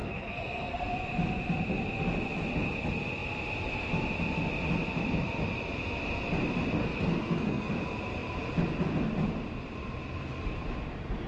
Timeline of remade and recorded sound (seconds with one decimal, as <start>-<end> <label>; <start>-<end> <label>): 0.0-0.9 remade; 0.9-6.8 recorded; 6.8-7.7 remade; 7.7-11.3 recorded